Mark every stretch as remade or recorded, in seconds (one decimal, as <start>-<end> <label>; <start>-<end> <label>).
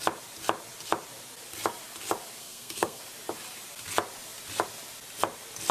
0.0-2.4 recorded; 2.4-3.0 remade; 3.0-5.7 recorded